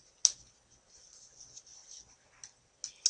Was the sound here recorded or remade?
recorded